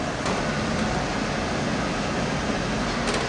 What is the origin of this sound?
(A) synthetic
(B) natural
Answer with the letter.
B